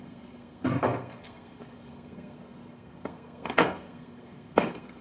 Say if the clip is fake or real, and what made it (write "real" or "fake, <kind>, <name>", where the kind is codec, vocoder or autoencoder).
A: fake, codec, SNAC